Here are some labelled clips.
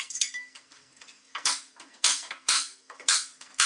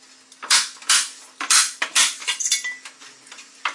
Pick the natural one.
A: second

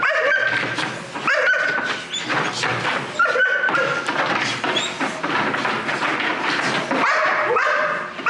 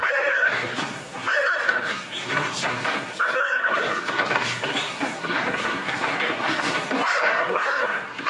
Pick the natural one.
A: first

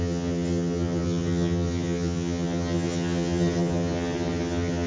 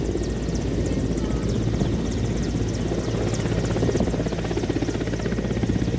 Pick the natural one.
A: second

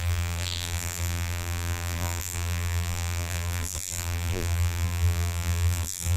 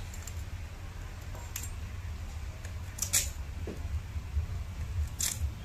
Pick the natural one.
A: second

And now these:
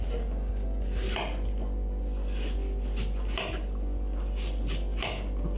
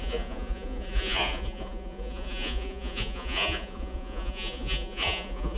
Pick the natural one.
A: first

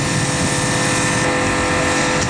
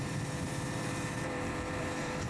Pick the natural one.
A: first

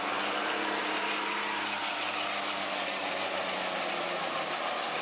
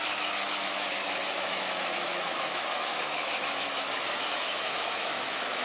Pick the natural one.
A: first